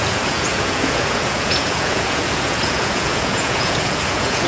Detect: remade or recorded remade